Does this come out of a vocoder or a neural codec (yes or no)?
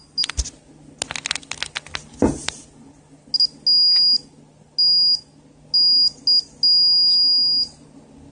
no